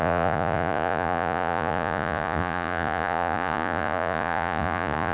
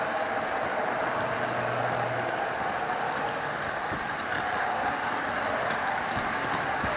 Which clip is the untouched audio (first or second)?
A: second